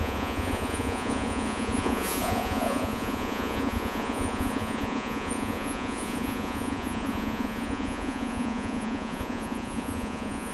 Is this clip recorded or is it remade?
remade